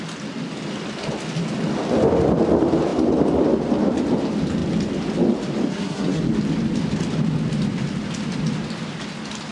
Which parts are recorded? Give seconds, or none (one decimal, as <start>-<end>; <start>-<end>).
0.0-5.7; 6.2-9.5